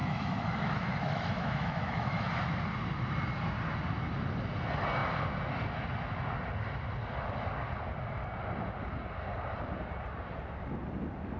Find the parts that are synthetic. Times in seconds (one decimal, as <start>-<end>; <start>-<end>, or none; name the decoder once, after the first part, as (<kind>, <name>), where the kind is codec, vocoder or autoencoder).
0.0-2.3 (autoencoder, DAC-VAE)